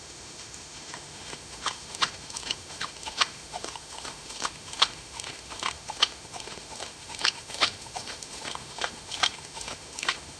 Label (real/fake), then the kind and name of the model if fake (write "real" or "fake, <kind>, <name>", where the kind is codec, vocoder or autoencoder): fake, autoencoder, DAC-VAE